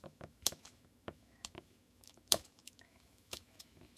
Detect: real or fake fake